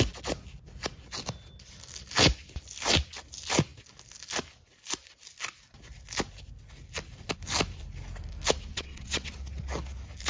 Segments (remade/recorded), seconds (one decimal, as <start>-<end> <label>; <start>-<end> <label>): 0.0-8.7 recorded; 8.7-9.3 remade; 9.3-10.3 recorded